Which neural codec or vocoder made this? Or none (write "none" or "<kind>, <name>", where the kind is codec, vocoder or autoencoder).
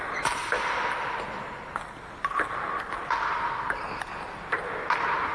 none